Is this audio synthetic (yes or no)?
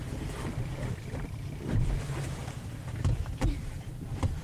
yes